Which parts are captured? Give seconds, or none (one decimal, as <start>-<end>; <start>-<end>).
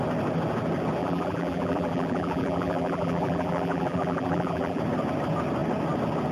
0.0-1.0; 4.8-6.3